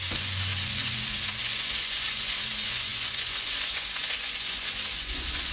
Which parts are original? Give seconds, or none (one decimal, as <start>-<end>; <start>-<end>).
none